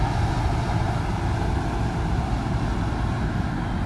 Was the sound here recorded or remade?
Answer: recorded